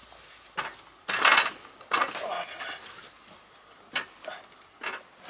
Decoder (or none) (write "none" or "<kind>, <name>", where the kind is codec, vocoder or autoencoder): none